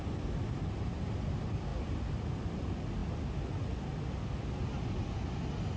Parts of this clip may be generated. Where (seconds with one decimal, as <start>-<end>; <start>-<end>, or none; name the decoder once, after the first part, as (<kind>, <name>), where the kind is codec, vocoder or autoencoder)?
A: none